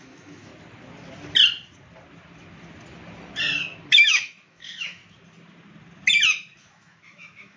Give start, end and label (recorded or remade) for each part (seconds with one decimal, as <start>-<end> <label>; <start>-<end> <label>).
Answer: 0.0-0.5 remade; 0.5-3.9 recorded; 3.9-5.0 remade; 5.0-6.6 recorded; 6.6-7.6 remade